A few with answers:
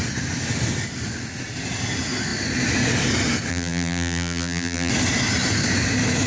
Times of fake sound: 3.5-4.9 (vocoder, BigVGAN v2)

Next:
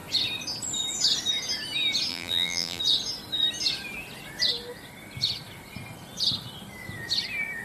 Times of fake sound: 2.1-2.8 (vocoder, BigVGAN v2)

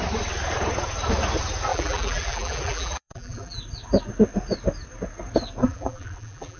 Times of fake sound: 1.7-3.6 (vocoder, BigVGAN v2); 5.6-6.6

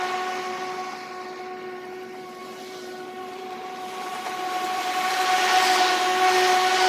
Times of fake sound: 2.4-5.4 (vocoder, BigVGAN v2)

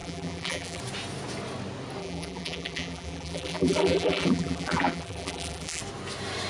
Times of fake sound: 0.0-0.8 (vocoder, BigVGAN v2); 2.0-5.8

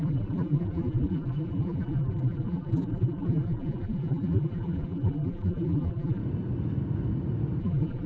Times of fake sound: 0.0-6.2 (vocoder, BigVGAN v2); 7.6-8.1